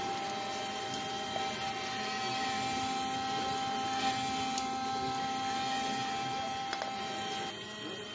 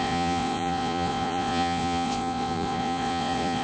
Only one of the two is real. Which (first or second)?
first